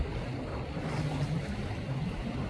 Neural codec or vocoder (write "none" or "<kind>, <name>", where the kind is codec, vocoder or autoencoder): none